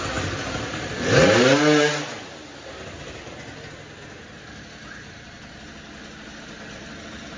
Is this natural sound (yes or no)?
yes